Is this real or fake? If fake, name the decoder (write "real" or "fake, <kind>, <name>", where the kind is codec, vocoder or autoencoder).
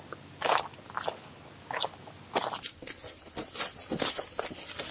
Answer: real